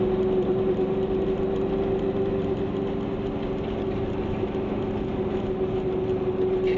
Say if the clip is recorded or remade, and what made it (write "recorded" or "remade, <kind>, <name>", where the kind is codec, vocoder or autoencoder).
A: recorded